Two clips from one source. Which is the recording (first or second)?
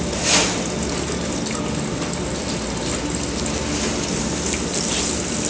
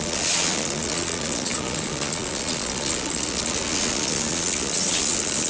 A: first